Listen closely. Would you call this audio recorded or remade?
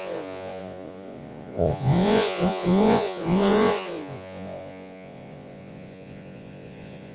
remade